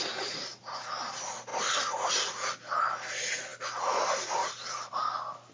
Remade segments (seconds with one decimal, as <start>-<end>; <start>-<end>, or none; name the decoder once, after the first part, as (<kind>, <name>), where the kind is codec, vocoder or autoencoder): none